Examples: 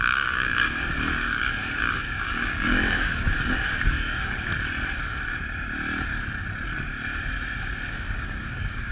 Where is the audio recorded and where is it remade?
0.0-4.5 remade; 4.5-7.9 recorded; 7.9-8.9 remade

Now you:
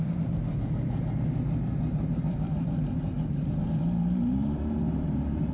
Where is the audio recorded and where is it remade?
0.0-5.5 remade

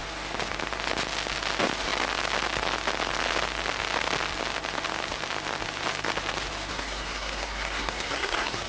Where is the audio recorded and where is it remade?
0.0-6.7 recorded; 6.7-8.7 remade

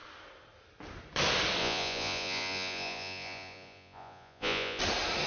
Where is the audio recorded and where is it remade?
0.0-1.6 recorded; 1.6-4.8 remade; 4.8-5.3 recorded

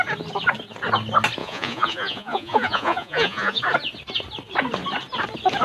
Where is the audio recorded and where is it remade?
0.0-1.4 recorded; 1.4-3.6 remade; 3.6-5.6 recorded

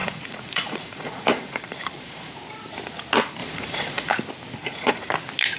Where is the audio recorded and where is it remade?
0.0-2.3 remade; 2.3-3.4 recorded; 3.4-4.1 remade; 4.1-4.6 recorded; 4.6-5.1 remade; 5.1-5.6 recorded

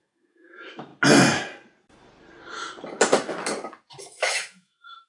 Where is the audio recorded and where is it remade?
0.0-0.9 remade; 0.9-4.0 recorded; 4.0-5.1 remade

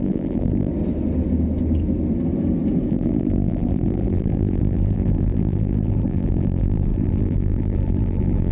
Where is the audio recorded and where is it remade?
0.0-0.7 remade; 0.7-2.9 recorded; 2.9-8.5 remade